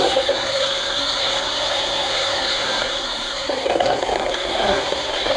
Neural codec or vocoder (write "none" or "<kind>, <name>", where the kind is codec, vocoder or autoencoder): codec, SNAC